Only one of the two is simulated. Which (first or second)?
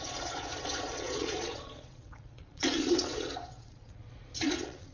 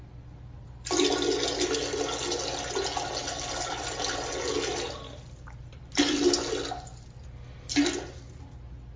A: first